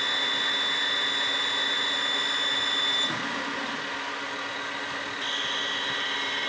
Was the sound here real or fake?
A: real